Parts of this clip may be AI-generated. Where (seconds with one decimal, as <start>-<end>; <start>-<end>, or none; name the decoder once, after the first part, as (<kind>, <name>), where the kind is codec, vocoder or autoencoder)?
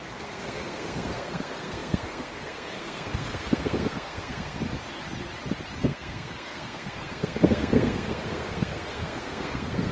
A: 0.0-4.6 (codec, SNAC); 5.8-9.9